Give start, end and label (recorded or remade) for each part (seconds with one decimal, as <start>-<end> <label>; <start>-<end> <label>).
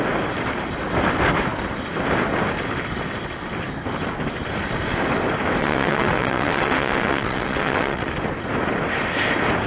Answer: 0.0-5.6 recorded; 5.6-8.1 remade; 8.1-9.7 recorded